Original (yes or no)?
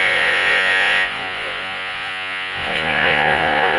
no